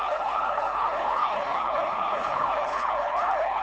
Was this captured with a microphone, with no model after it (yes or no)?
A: no